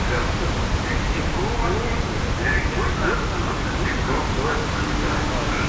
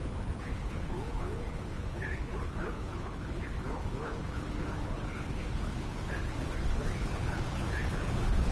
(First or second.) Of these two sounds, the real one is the first